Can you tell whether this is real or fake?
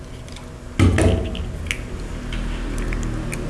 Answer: real